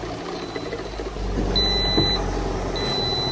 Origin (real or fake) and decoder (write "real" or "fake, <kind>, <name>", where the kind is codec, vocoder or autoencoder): real